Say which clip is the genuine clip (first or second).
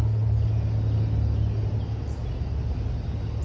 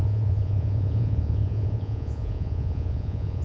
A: first